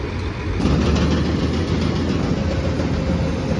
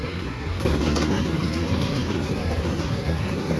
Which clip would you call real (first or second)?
first